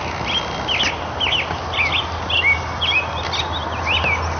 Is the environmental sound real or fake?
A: real